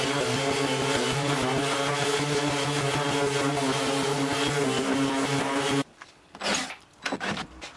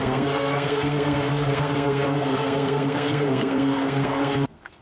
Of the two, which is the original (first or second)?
first